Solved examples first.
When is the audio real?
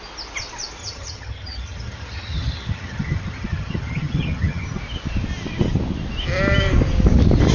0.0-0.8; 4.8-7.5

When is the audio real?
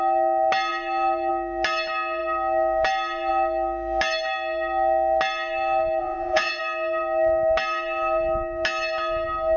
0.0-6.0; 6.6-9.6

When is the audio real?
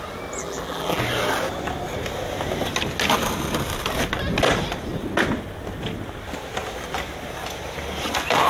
0.0-0.4; 1.0-8.5